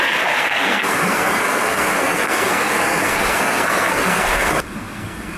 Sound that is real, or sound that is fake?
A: fake